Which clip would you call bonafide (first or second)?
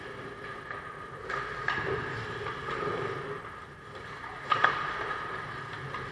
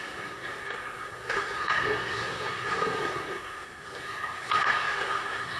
first